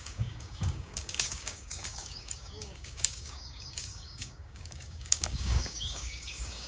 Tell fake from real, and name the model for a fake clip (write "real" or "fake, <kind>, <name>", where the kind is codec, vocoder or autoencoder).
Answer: fake, codec, DAC